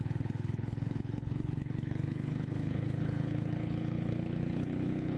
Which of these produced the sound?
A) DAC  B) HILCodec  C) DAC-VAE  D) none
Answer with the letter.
B